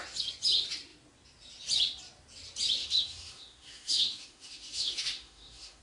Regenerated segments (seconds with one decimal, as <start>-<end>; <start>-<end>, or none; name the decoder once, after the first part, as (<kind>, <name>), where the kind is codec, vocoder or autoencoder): 2.8-5.8 (autoencoder, DAC-VAE)